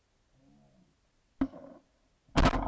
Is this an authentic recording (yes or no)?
yes